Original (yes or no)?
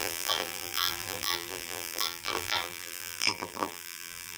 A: no